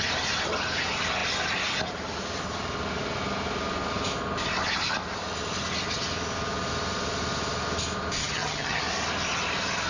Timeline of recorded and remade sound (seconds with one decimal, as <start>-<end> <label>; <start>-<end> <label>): 0.0-8.2 recorded; 8.2-8.8 remade; 8.8-9.9 recorded